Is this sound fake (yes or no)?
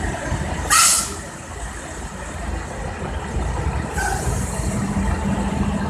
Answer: no